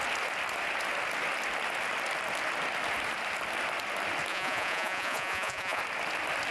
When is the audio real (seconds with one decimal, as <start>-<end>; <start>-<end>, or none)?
0.0-4.3; 5.8-6.5